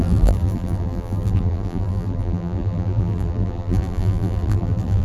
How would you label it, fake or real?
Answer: fake